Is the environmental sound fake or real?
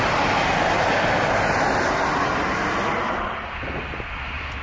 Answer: real